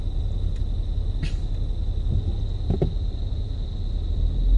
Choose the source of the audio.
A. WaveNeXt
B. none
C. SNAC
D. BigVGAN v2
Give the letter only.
B